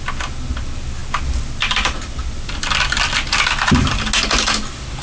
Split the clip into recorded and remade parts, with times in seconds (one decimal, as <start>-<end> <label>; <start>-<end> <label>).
0.0-5.0 recorded

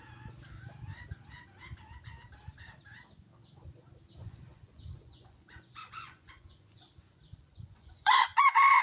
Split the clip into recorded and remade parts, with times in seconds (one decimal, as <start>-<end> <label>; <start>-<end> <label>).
0.0-4.2 recorded; 4.2-8.8 remade

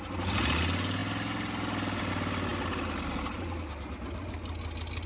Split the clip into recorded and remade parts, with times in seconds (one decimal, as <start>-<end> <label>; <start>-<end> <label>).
0.0-5.1 recorded

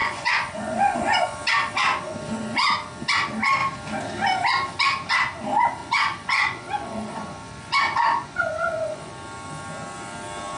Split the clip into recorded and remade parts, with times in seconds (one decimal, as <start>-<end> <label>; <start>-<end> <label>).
0.0-1.4 remade; 1.4-5.8 recorded; 5.8-9.1 remade; 9.1-10.6 recorded